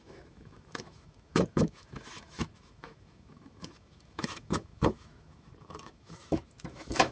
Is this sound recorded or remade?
remade